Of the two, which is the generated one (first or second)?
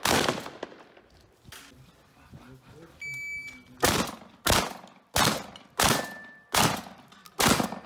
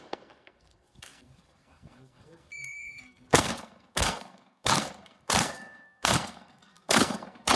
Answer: second